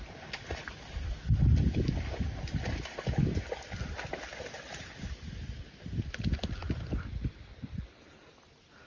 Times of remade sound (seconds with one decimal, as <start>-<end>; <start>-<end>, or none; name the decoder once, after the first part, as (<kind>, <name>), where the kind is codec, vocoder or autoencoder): none